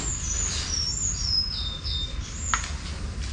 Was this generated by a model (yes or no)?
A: no